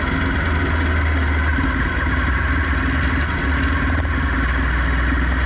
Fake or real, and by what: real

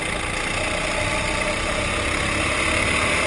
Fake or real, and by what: real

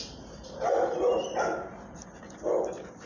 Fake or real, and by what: real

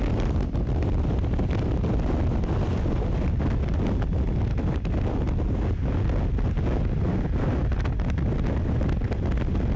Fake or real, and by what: real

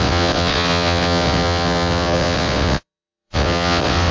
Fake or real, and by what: fake, vocoder, WaveNeXt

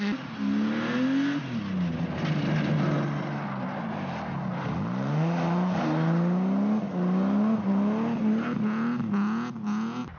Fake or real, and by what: real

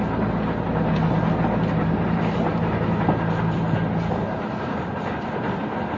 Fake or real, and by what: real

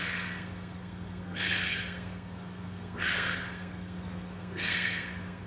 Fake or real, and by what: fake, codec, SNAC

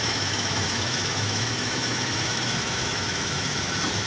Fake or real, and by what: fake, autoencoder, DAC-VAE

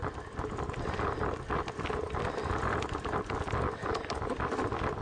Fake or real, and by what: real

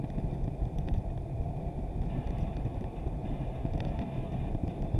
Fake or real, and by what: fake, vocoder, BigVGAN v2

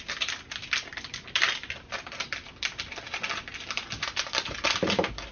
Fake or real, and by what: real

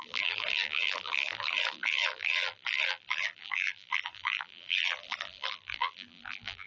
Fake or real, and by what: fake, vocoder, BigVGAN v2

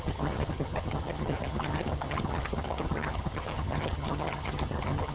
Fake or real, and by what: fake, vocoder, HiFi-GAN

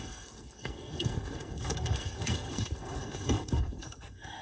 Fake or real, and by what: fake, codec, SNAC